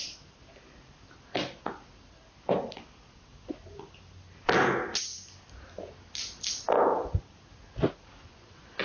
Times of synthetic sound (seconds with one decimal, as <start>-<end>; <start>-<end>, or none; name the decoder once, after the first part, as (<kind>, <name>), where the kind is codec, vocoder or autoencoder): 8.2-8.8 (vocoder, Vocos)